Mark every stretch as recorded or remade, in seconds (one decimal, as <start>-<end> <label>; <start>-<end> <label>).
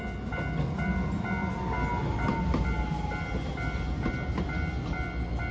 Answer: 0.0-5.5 recorded